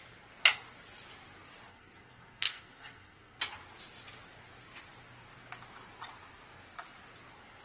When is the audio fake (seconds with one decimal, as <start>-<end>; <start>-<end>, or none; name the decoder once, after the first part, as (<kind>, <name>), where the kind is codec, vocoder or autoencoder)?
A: 1.7-3.4 (codec, SNAC)